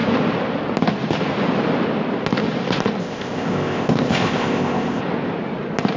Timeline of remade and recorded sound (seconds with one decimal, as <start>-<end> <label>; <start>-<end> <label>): 0.0-3.0 recorded; 3.0-5.0 remade; 5.0-6.0 recorded